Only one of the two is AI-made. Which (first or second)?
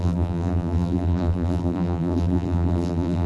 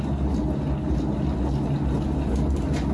first